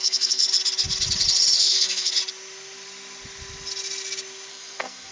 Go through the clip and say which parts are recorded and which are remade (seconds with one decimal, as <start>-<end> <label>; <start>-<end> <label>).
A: 0.0-0.4 remade; 0.4-1.6 recorded; 1.6-2.1 remade; 2.1-4.5 recorded; 4.5-5.1 remade